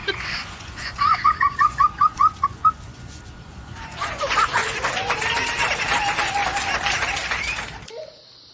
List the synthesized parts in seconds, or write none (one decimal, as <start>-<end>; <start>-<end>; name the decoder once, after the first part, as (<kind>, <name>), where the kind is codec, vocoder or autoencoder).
0.0-4.9 (vocoder, Vocos)